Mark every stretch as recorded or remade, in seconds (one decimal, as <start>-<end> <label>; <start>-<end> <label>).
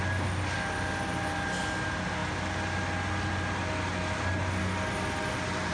0.0-5.7 recorded